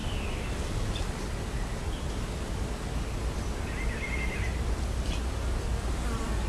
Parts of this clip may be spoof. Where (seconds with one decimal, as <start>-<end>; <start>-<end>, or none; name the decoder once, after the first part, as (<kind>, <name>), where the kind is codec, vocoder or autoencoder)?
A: 0.0-1.0 (vocoder, BigVGAN v2); 1.8-2.6; 4.5-6.5